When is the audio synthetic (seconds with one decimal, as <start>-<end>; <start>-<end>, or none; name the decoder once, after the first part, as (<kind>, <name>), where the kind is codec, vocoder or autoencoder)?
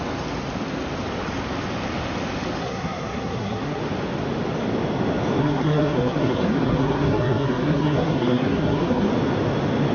2.6-3.8 (codec, SNAC); 5.4-9.1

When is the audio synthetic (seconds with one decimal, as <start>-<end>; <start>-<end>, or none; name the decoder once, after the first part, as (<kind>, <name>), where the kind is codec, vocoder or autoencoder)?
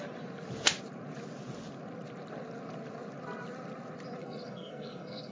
4.2-5.3 (codec, SNAC)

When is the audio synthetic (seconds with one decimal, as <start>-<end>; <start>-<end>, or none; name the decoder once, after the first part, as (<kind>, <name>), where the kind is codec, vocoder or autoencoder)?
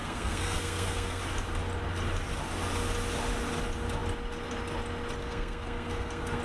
0.0-1.2 (codec, SNAC); 5.2-6.4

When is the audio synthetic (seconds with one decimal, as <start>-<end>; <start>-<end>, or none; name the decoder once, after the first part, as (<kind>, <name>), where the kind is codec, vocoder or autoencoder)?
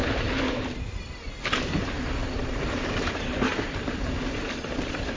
2.2-4.4 (vocoder, BigVGAN v2)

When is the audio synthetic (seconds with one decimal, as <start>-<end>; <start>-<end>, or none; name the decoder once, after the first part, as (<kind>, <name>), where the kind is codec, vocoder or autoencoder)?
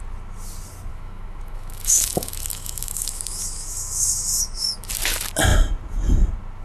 0.9-4.9 (autoencoder, DAC-VAE)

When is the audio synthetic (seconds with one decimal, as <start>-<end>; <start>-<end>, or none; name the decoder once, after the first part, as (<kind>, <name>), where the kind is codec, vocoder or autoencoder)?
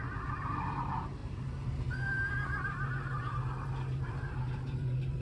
0.0-5.2 (vocoder, BigVGAN v2)